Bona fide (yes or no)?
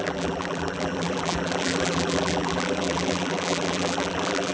no